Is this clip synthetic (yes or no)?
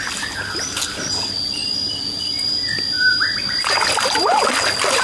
no